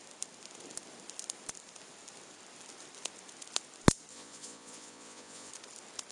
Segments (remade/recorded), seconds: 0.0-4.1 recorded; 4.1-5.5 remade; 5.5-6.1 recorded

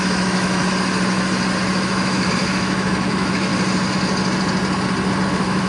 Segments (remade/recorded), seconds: 0.0-0.6 remade; 0.6-1.9 recorded; 1.9-3.5 remade; 3.5-5.3 recorded; 5.3-5.7 remade

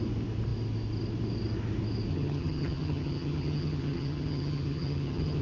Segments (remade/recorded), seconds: 0.0-2.1 recorded; 2.1-5.4 remade

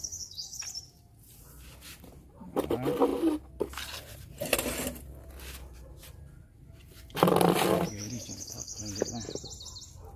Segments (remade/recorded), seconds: 0.0-0.6 remade; 0.6-8.0 recorded; 8.0-8.8 remade; 8.8-10.2 recorded

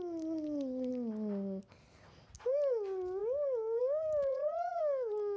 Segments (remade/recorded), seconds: 0.0-4.3 recorded; 4.3-4.8 remade; 4.8-5.4 recorded

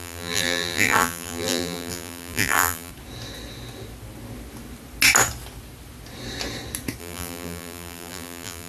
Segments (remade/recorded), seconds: 0.0-2.9 remade; 2.9-7.0 recorded; 7.0-8.7 remade

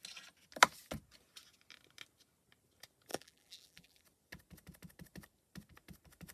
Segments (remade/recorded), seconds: 0.0-3.1 recorded; 3.1-4.0 remade; 4.0-6.3 recorded